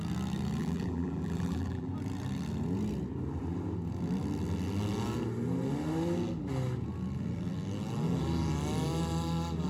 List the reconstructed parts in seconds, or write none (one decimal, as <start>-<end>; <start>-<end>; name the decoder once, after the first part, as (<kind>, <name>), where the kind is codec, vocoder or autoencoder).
0.6-1.9 (vocoder, BigVGAN v2)